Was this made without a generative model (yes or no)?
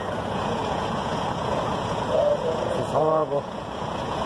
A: no